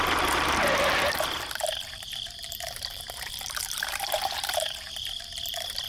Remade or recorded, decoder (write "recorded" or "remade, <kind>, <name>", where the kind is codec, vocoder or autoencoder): remade, vocoder, BigVGAN v2